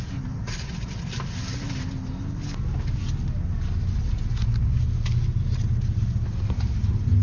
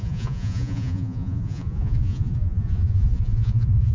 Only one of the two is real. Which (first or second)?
first